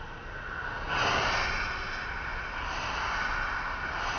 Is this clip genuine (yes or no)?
yes